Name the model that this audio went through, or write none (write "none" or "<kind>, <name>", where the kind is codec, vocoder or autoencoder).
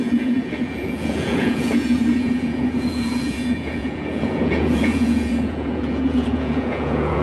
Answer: vocoder, Vocos